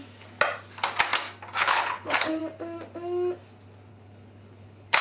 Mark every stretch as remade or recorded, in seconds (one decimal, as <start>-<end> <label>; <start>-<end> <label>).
0.0-1.6 recorded; 1.6-2.4 remade; 2.4-3.9 recorded; 3.9-5.0 remade